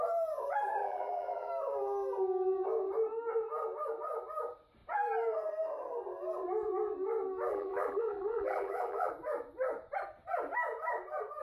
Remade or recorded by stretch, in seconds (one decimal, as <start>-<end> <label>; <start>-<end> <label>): 0.0-0.8 recorded; 0.8-1.5 remade; 1.5-7.5 recorded; 7.5-9.1 remade; 9.1-11.4 recorded